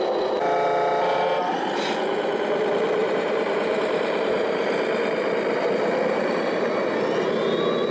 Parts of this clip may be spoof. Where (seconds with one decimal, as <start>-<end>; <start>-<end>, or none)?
3.0-6.7